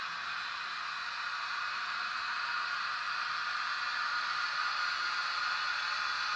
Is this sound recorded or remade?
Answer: recorded